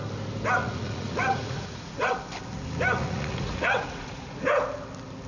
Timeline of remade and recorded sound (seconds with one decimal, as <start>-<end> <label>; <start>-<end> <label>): 0.0-0.6 recorded; 0.6-2.1 remade; 2.1-3.0 recorded; 3.0-4.5 remade; 4.5-5.3 recorded